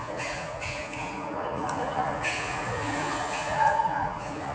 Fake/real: fake